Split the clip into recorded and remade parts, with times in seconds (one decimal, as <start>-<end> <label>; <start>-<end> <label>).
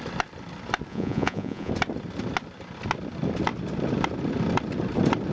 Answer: 0.0-0.9 recorded; 0.9-1.7 remade; 1.7-5.3 recorded